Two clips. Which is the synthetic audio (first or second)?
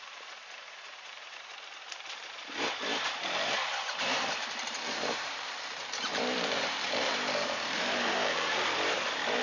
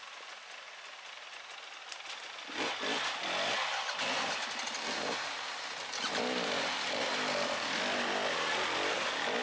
first